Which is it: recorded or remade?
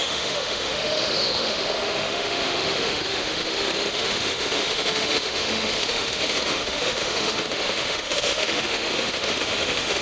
remade